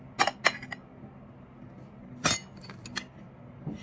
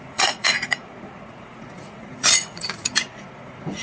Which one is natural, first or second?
first